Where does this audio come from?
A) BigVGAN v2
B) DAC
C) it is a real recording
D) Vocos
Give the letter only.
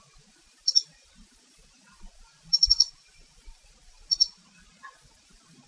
D